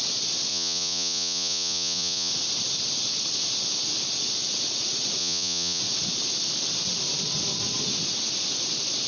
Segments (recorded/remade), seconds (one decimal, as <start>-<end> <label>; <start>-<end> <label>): 0.0-0.5 recorded; 0.5-2.3 remade; 2.3-5.2 recorded; 5.2-5.8 remade; 5.8-9.1 recorded